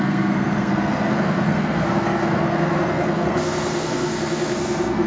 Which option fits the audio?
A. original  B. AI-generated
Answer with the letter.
B